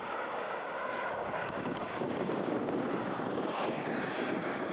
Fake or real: fake